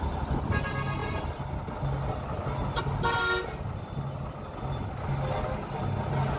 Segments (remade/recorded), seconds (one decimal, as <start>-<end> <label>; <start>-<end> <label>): 0.0-6.4 recorded